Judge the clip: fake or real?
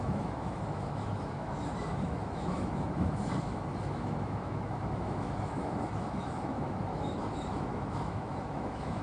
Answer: fake